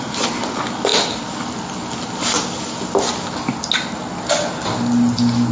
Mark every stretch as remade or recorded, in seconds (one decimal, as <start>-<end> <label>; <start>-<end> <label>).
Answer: 0.0-5.5 recorded